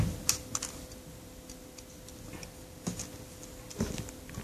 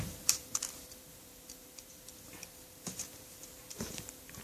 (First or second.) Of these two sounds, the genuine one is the first